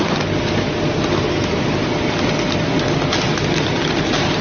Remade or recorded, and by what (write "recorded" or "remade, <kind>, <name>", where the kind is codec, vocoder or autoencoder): recorded